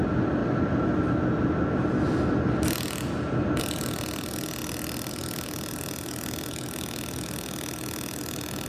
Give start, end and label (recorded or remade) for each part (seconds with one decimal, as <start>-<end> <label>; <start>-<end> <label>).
0.0-8.7 recorded